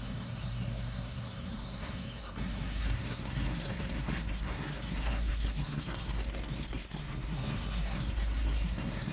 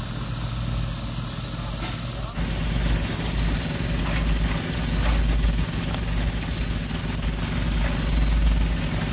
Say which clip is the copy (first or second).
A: first